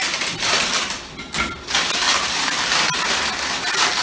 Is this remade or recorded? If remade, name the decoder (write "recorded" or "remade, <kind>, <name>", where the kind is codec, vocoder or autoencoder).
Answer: recorded